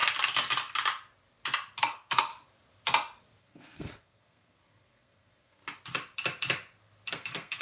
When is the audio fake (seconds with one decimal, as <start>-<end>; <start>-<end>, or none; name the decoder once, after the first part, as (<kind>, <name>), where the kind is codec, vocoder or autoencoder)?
1.8-2.3 (codec, SNAC); 3.4-5.6; 7.1-7.6